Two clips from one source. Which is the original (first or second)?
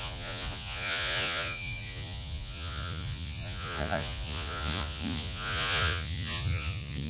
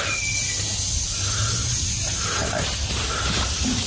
second